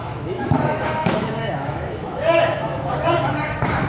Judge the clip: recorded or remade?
remade